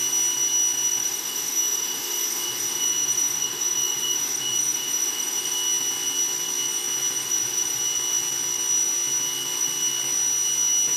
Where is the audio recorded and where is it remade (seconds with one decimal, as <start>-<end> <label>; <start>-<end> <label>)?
0.0-1.0 recorded; 1.0-5.5 remade; 5.5-7.2 recorded; 7.2-7.8 remade; 7.8-11.0 recorded